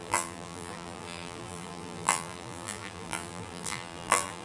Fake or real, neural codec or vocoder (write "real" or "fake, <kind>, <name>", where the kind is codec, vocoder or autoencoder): fake, vocoder, BigVGAN v2